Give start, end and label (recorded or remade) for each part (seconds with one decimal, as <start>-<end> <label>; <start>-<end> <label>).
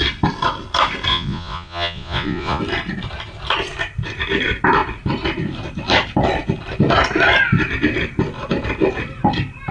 0.0-1.1 recorded; 1.1-2.6 remade; 2.6-9.7 recorded